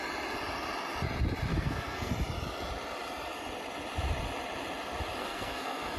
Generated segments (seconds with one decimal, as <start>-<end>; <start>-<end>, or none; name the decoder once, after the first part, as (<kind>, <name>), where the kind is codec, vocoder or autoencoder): 1.5-2.1 (codec, SNAC); 5.2-6.0